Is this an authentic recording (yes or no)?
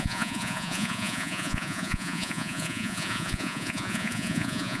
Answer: no